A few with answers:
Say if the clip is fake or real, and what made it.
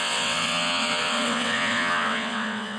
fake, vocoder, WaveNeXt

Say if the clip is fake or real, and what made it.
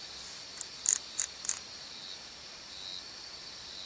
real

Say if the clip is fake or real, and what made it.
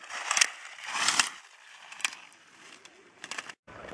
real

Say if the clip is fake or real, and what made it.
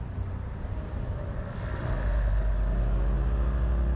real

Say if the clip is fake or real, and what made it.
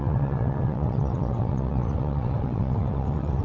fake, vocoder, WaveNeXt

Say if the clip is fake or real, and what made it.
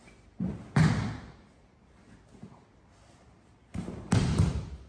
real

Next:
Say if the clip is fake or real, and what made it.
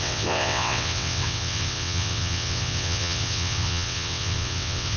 fake, vocoder, WaveNeXt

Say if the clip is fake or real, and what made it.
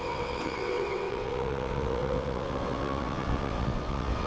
fake, vocoder, WaveNeXt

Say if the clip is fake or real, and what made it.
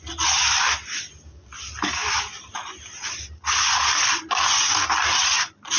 real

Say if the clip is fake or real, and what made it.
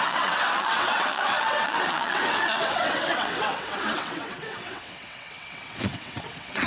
fake, vocoder, WaveNeXt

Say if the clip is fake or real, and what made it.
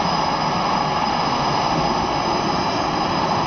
real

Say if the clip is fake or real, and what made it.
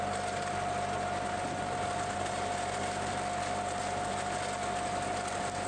real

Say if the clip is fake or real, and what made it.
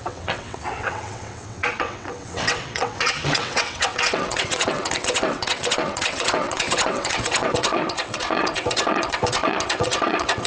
fake, vocoder, WaveNeXt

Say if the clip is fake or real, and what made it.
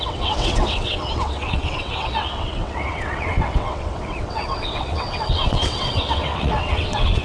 fake, vocoder, WaveNeXt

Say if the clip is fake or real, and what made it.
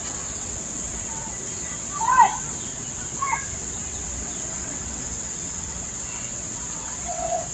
fake, vocoder, WaveNeXt